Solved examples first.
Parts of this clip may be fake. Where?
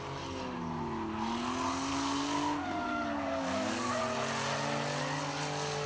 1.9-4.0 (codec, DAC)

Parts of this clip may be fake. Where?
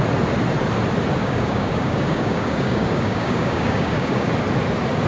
1.2-4.3 (codec, DAC)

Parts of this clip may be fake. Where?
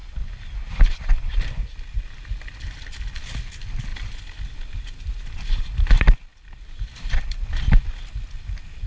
none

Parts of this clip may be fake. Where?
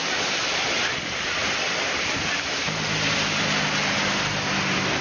none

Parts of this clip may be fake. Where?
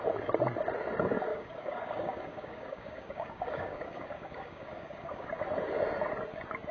1.3-5.3 (codec, DAC)